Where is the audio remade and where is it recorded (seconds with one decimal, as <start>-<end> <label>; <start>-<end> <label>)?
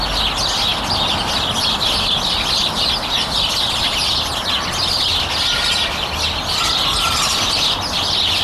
0.0-8.4 recorded